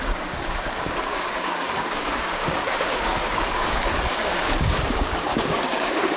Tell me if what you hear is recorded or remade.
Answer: remade